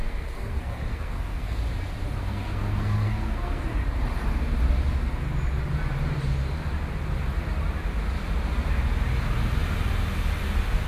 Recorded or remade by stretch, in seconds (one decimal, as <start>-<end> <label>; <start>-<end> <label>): 0.0-1.6 remade; 1.6-2.2 recorded; 2.2-3.6 remade; 3.6-10.9 recorded